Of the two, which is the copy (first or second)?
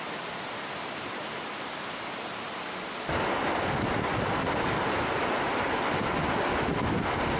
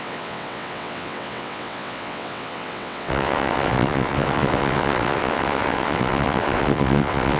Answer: second